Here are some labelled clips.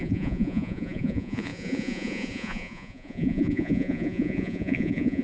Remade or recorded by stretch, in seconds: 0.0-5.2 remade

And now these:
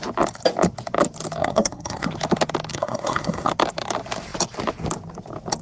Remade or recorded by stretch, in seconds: 0.0-1.4 recorded; 1.4-2.1 remade; 2.1-2.7 recorded; 2.7-3.5 remade; 3.5-5.6 recorded

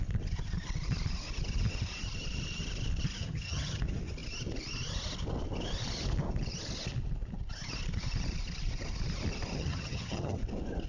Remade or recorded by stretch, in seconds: 0.0-3.2 recorded; 3.2-3.8 remade; 3.8-9.5 recorded; 9.5-10.4 remade; 10.4-10.9 recorded

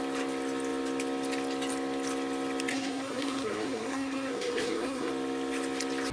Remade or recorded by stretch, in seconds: 0.0-2.7 recorded; 2.7-5.1 remade; 5.1-6.1 recorded

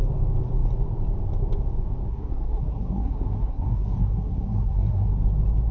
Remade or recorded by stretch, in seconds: 0.0-2.1 recorded; 2.1-5.1 remade; 5.1-5.7 recorded